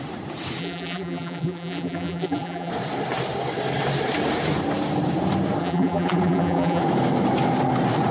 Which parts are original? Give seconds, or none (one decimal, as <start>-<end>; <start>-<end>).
0.0-0.6; 2.7-5.6; 6.8-8.1